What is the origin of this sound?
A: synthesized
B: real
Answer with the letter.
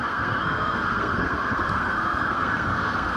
A